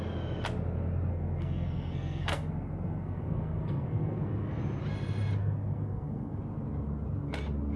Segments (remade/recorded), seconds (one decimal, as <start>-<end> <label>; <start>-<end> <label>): 0.0-1.1 recorded; 1.1-4.6 remade; 4.6-5.4 recorded; 5.4-6.4 remade; 6.4-7.8 recorded